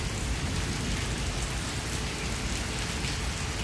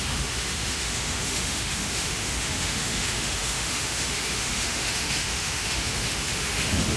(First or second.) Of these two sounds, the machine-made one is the second